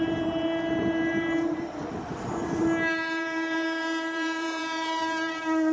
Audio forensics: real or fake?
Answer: fake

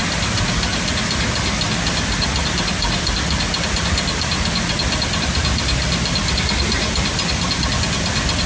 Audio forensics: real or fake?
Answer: real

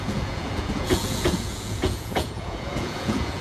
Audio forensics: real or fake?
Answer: fake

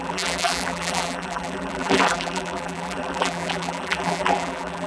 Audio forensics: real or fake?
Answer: fake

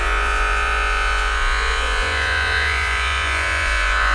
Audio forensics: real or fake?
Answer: fake